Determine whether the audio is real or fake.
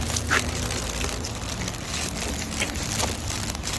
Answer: real